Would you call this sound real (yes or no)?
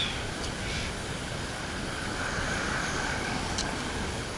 no